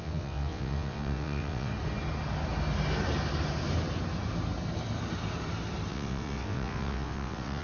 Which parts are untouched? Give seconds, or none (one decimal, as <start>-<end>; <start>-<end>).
1.7-5.9